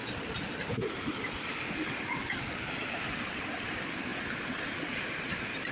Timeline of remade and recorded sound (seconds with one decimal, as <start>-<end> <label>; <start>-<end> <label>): 0.0-5.7 recorded